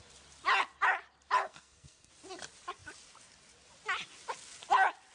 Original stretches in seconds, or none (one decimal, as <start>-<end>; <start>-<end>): 0.0-1.4; 2.1-5.1